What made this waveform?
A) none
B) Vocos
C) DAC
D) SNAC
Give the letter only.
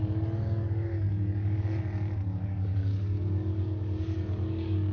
C